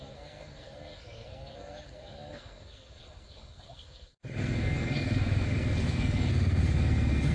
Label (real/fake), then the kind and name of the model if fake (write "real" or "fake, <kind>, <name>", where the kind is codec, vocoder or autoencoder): fake, codec, SNAC